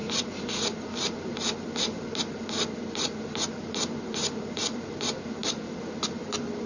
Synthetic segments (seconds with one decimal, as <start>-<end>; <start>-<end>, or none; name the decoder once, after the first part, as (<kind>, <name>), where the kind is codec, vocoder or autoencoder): none